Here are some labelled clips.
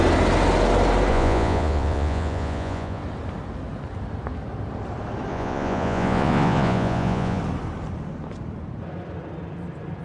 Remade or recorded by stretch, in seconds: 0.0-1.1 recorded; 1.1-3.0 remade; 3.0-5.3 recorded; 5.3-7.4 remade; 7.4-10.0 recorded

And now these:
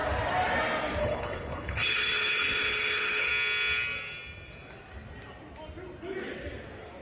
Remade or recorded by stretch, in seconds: 0.0-1.0 recorded; 1.0-3.3 remade; 3.3-7.0 recorded

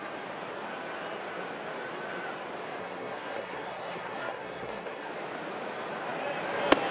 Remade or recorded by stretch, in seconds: 0.0-2.8 recorded; 2.8-5.1 remade; 5.1-6.9 recorded

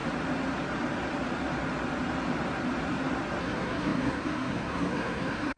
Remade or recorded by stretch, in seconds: 0.0-3.4 recorded; 3.4-5.6 remade

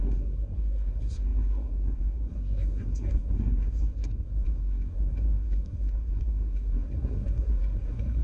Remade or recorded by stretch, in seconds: 0.0-8.2 remade